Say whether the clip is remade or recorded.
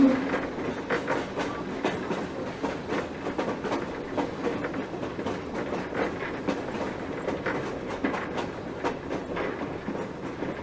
recorded